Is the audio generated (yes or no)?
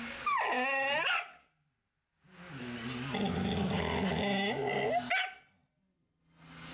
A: no